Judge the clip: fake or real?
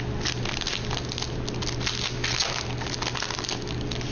real